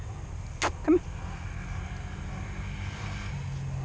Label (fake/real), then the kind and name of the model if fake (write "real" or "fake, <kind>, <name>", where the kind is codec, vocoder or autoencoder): real